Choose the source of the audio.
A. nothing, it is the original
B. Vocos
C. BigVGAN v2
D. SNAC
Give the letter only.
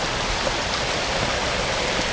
A